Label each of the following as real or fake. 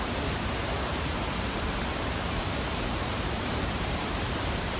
fake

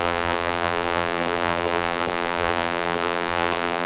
fake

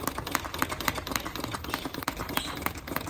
fake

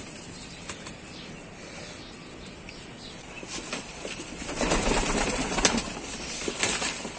fake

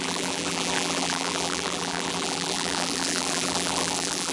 fake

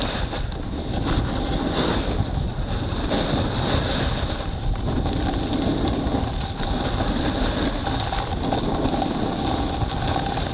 real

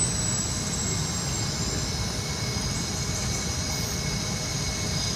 real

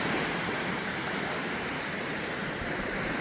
fake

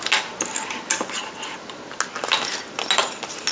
real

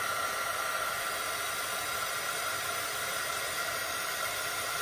fake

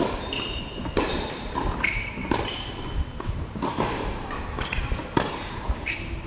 fake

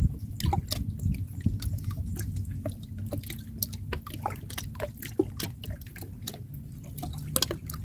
real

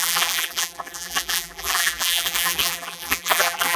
fake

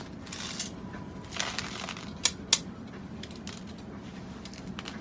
real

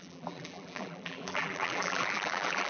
fake